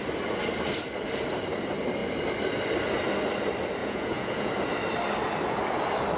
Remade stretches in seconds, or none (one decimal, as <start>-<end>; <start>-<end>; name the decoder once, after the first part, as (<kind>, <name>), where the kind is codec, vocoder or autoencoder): 3.8-4.5 (vocoder, Vocos)